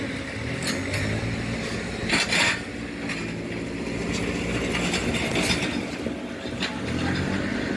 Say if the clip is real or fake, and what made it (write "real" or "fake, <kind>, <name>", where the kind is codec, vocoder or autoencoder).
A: real